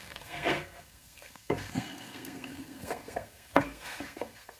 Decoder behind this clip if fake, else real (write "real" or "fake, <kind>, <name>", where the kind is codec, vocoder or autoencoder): fake, codec, SNAC